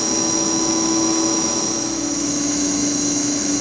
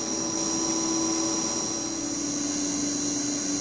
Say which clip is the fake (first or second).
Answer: first